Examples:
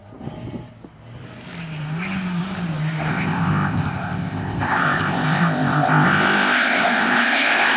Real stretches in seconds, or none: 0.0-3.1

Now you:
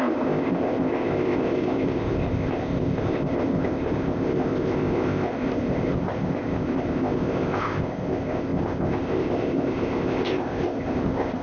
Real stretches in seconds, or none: none